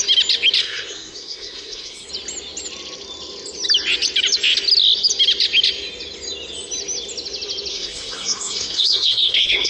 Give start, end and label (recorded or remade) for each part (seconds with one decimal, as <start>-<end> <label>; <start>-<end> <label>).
0.0-0.6 recorded; 0.6-2.1 remade; 2.1-7.7 recorded; 7.7-9.7 remade